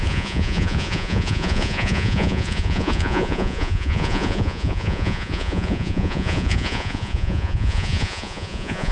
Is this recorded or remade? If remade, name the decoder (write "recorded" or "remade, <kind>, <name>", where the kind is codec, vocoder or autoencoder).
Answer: remade, vocoder, Vocos